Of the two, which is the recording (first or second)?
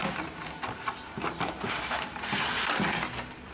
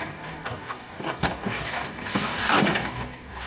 first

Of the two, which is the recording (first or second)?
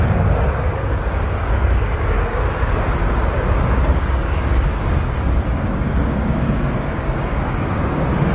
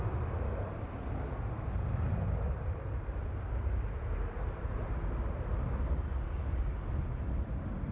second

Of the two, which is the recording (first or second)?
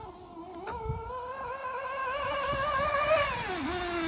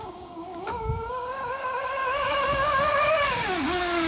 first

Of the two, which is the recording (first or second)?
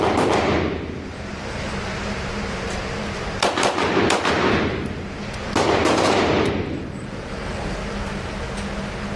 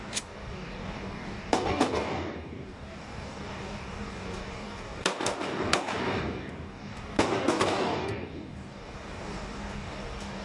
first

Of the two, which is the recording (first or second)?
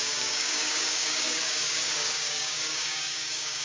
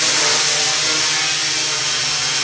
second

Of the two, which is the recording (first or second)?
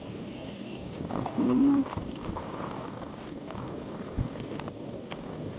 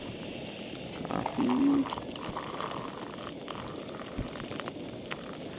second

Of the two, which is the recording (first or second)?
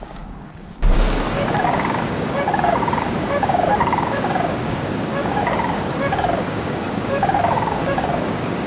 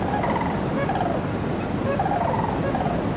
second